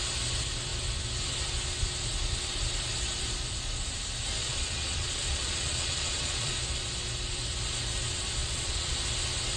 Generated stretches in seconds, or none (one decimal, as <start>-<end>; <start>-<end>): 4.4-6.5; 8.4-9.0

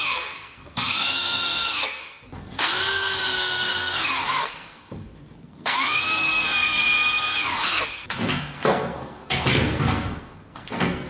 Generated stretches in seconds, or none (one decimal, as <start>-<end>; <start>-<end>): 0.0-11.1